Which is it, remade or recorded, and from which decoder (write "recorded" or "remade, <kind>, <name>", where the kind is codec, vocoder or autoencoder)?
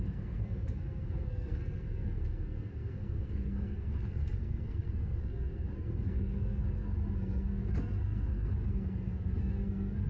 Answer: remade, codec, SNAC